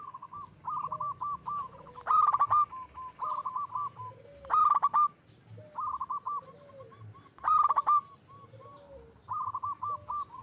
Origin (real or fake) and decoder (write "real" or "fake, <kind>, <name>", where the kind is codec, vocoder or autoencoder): real